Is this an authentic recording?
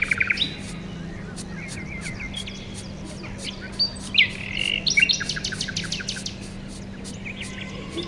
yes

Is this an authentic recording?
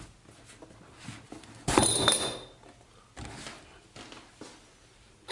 yes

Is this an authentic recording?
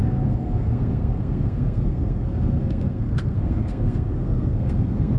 no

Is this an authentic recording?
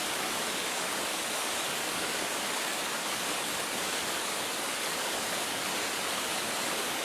no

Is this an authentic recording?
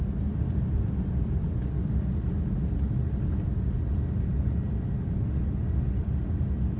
yes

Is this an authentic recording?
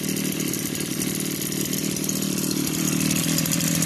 no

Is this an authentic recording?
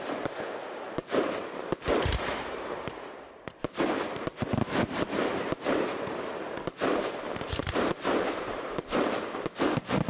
no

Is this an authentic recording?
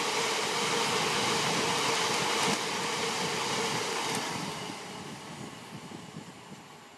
yes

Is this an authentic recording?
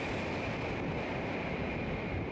yes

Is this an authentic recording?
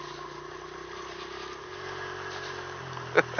yes